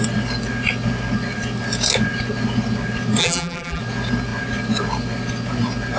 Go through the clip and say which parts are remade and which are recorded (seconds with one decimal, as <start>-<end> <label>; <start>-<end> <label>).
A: 0.0-3.2 recorded; 3.2-3.8 remade; 3.8-6.0 recorded